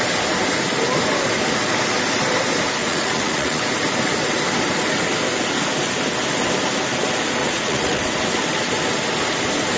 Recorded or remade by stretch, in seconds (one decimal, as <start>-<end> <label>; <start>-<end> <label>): 0.0-2.8 recorded; 2.8-3.6 remade; 3.6-7.4 recorded; 7.4-8.0 remade; 8.0-9.8 recorded